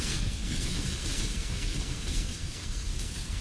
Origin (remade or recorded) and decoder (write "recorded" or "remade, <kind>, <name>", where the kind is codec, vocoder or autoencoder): remade, codec, SNAC